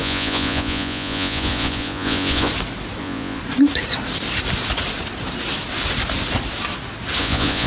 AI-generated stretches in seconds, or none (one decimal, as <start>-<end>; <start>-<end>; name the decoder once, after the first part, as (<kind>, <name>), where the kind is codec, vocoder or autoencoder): 0.0-2.5 (vocoder, Vocos); 3.0-3.4; 7.2-7.7